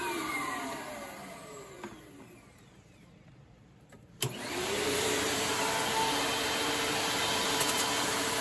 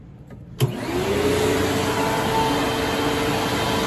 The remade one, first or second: first